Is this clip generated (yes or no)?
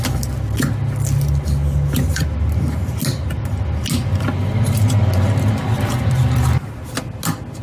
no